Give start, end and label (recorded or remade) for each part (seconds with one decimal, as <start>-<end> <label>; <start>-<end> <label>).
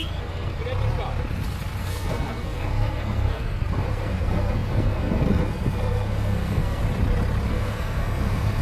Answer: 0.0-0.6 remade; 0.6-1.8 recorded; 1.8-6.8 remade; 6.8-7.5 recorded; 7.5-8.6 remade